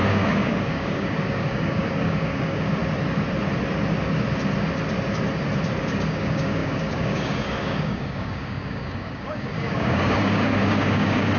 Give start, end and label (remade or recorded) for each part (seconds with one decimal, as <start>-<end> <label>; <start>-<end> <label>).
0.0-2.8 remade; 2.8-5.8 recorded; 5.8-11.4 remade